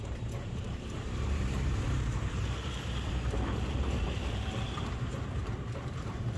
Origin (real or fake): fake